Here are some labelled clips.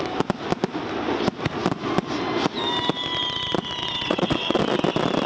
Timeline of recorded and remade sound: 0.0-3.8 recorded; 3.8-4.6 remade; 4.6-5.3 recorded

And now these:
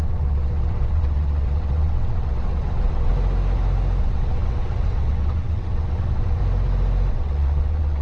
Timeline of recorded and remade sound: 0.0-3.1 remade; 3.1-4.0 recorded; 4.0-6.4 remade; 6.4-7.1 recorded; 7.1-8.0 remade

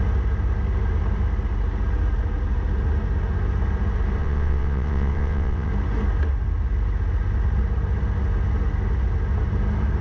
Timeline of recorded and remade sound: 0.0-4.2 recorded; 4.2-5.7 remade; 5.7-10.0 recorded

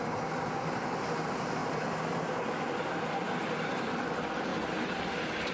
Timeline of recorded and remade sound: 0.0-5.5 recorded